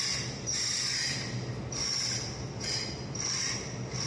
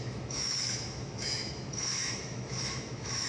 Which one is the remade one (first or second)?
second